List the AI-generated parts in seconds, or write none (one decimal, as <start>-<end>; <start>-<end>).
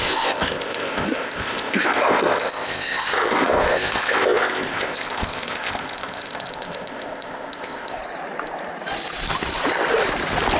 0.0-8.0